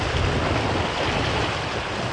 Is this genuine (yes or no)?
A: yes